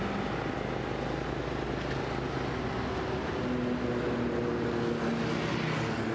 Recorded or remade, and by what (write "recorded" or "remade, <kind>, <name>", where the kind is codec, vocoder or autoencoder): recorded